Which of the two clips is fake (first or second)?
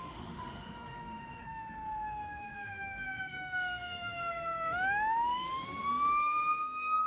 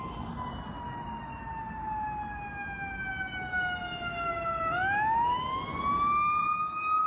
first